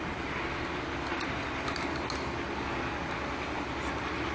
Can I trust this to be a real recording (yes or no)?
yes